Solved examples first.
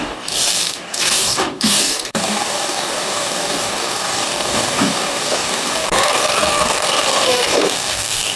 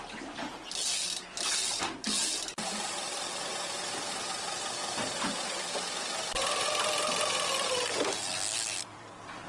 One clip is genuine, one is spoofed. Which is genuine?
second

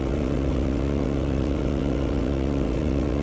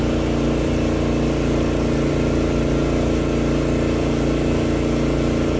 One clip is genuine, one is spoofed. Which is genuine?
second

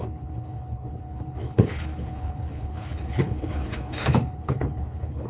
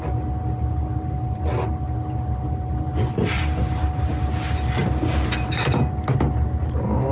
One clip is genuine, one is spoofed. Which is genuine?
second